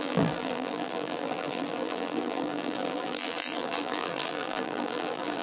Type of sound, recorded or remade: remade